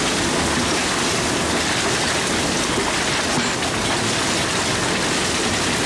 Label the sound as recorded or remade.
recorded